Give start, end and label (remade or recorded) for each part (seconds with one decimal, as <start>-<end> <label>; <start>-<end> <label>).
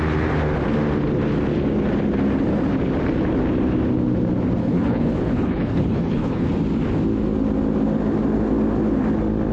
0.0-4.6 recorded; 4.6-6.5 remade; 6.5-9.5 recorded